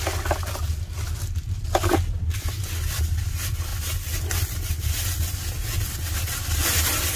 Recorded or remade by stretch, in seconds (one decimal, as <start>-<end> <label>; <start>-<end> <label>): 0.0-7.2 recorded